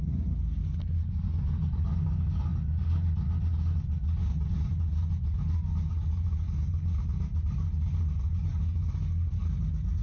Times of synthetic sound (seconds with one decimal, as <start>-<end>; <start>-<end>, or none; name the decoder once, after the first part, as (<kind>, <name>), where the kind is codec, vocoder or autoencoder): none